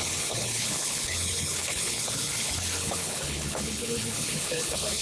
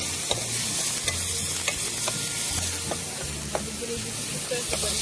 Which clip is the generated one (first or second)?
first